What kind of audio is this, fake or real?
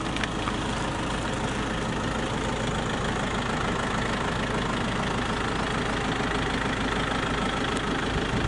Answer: real